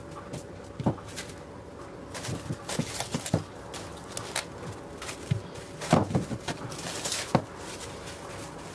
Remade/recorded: recorded